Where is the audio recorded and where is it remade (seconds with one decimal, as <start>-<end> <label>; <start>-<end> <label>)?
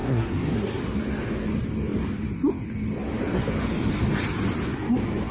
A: 0.0-0.8 remade; 0.8-5.3 recorded